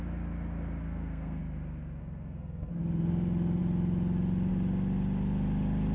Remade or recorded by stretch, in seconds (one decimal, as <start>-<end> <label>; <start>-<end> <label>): 0.0-0.8 recorded; 0.8-1.4 remade; 1.4-2.0 recorded; 2.0-2.7 remade; 2.7-5.9 recorded